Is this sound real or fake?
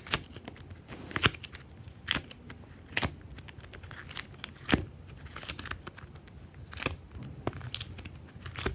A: real